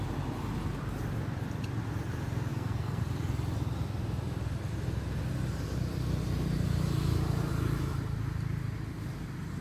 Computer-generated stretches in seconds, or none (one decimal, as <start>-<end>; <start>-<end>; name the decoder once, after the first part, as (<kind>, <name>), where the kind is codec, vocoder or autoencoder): 2.5-3.0 (codec, SNAC)